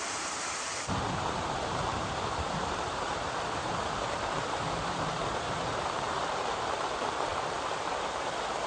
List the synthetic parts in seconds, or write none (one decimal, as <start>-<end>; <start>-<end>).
0.0-8.7